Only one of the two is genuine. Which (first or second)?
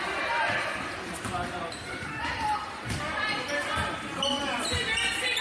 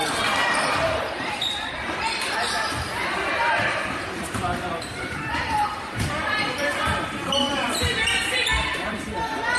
first